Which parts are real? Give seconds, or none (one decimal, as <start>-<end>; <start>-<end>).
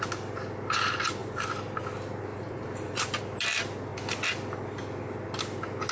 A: 0.0-1.2; 1.8-2.3; 3.2-5.9